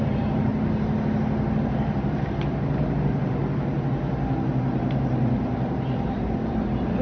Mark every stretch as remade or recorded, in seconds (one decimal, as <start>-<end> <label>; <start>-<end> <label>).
0.0-0.5 remade; 0.5-1.6 recorded; 1.6-3.4 remade; 3.4-4.5 recorded; 4.5-7.0 remade